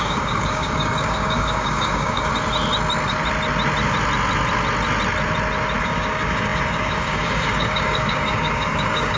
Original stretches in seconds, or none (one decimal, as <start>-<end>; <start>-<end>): 2.3-5.8

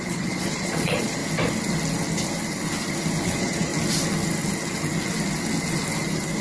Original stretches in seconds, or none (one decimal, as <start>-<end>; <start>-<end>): 1.2-3.2; 3.7-6.4

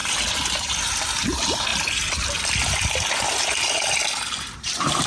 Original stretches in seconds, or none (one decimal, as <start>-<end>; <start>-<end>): 0.0-5.1

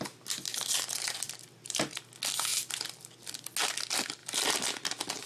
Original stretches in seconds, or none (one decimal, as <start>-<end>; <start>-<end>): 0.0-2.5; 3.3-5.3

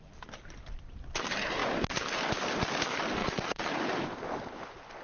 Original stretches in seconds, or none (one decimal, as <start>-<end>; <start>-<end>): 0.0-3.2; 3.7-5.0

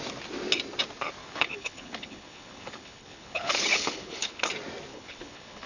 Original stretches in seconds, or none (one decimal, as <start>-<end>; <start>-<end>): 0.0-1.2; 4.5-4.9